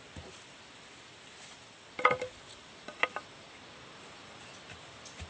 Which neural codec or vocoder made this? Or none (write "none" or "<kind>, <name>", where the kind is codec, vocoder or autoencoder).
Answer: none